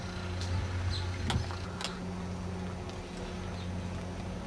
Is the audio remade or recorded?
recorded